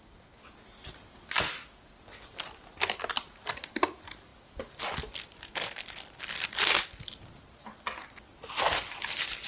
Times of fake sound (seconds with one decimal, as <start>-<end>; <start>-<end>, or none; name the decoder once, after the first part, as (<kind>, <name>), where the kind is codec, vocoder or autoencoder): none